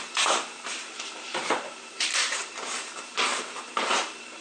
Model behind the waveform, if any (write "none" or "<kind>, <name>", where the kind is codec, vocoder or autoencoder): vocoder, BigVGAN v2